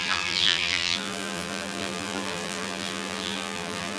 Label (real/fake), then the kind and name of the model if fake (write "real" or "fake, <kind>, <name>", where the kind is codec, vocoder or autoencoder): fake, vocoder, BigVGAN v2